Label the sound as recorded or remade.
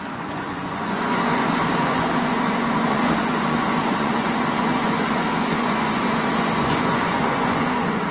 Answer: remade